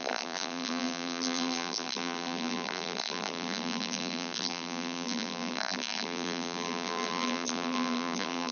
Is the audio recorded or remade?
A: remade